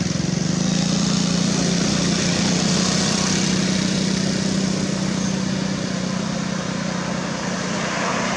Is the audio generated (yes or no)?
no